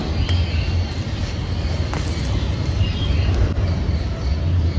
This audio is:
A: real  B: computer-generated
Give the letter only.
A